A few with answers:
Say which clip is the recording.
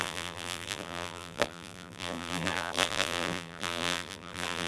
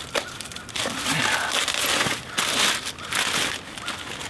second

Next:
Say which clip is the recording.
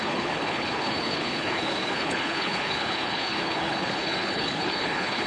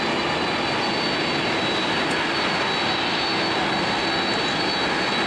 second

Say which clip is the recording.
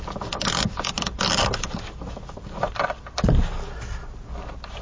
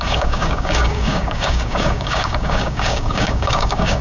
first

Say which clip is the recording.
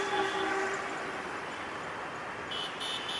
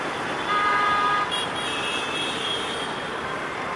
first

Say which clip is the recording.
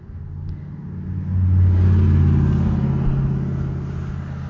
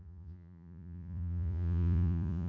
first